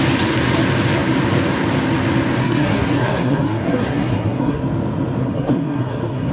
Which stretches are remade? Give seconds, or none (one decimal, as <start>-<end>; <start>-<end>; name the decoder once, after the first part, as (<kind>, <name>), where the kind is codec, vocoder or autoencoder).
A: 2.4-4.6 (codec, SNAC); 5.2-6.3